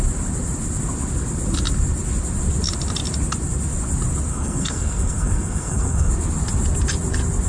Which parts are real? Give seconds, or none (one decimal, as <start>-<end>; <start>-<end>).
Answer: 0.0-4.3; 6.1-7.5